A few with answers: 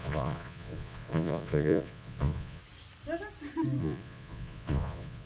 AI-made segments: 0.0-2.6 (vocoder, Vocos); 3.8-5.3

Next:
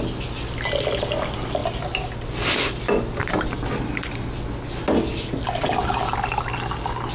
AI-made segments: none